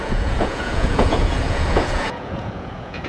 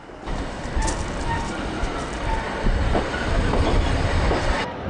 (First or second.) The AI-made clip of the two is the first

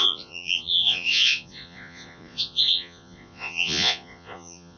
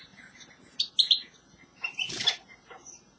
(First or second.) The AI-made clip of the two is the first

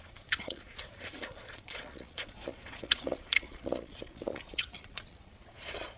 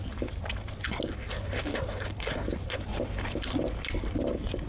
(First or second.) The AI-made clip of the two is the first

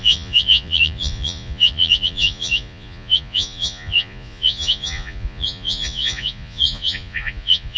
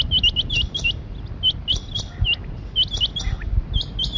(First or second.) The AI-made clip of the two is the first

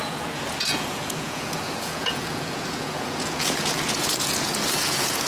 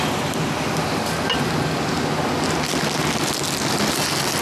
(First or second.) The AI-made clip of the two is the first